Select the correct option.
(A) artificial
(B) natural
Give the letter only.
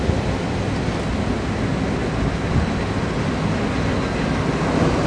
B